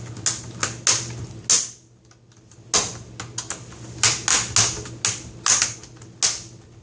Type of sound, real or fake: real